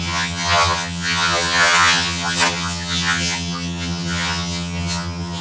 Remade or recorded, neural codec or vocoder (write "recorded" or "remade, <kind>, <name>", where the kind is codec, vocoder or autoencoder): remade, vocoder, HiFi-GAN